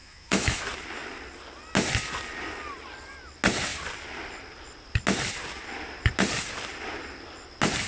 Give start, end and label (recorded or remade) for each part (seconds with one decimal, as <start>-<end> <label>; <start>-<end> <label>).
0.0-0.6 remade; 0.6-7.9 recorded